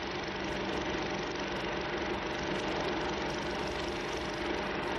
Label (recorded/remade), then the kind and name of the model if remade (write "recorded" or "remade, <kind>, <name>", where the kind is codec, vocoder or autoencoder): recorded